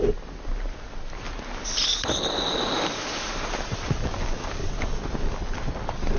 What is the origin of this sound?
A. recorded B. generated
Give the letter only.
A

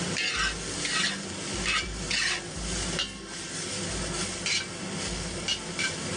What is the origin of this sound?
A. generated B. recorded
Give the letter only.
B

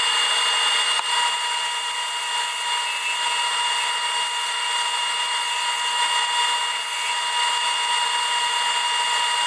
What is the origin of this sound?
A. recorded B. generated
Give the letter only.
A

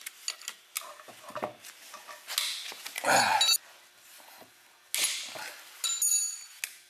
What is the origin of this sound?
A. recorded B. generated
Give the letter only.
A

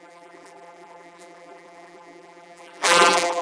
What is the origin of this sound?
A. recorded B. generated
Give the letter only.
B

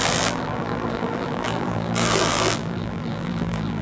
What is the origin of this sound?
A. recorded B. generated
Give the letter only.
B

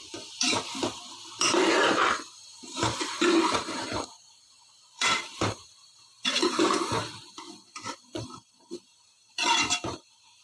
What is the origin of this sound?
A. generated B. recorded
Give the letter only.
A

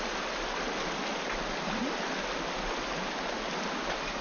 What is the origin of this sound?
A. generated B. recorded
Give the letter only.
B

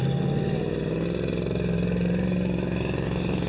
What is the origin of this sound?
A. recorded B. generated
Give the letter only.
A